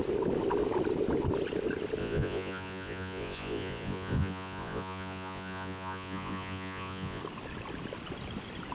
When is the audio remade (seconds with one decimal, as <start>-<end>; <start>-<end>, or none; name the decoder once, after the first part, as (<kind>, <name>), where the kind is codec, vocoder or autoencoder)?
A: 2.0-7.2 (vocoder, Vocos)